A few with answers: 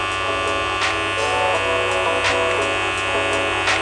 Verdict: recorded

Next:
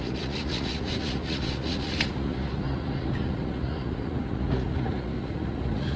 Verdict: remade